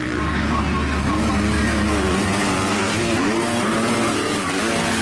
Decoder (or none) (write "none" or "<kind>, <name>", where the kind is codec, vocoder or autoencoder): none